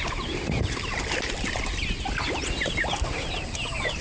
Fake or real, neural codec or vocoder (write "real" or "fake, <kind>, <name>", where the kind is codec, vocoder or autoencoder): real